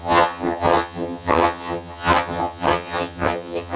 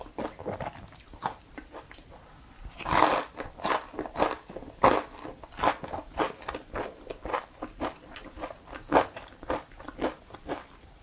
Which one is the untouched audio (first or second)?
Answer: second